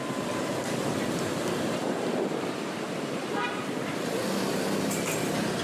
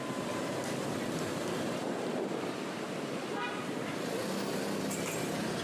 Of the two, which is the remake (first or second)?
first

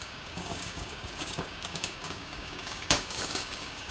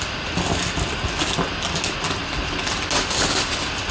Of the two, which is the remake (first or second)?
first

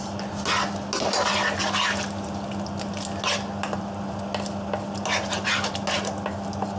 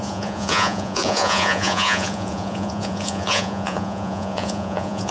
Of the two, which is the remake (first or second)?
second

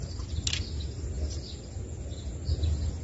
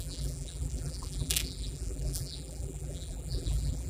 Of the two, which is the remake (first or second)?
second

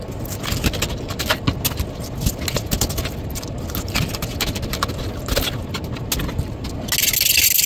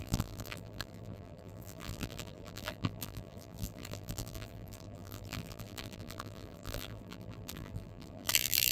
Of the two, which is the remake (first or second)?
second